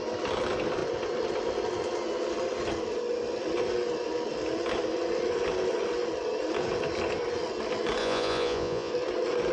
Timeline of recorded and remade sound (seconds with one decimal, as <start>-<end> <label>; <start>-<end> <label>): 0.0-8.0 recorded; 8.0-8.9 remade; 8.9-9.5 recorded